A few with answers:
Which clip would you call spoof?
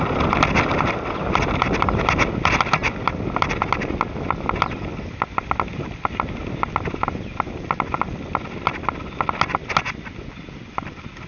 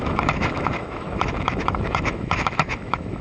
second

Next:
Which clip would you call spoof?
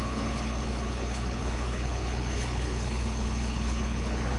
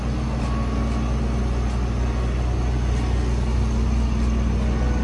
first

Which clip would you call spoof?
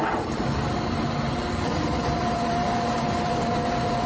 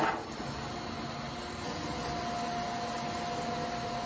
first